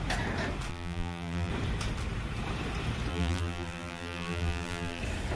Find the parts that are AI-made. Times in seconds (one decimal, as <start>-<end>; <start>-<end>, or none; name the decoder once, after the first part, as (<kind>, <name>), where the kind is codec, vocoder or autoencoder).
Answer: 0.7-1.5 (vocoder, BigVGAN v2); 3.1-5.0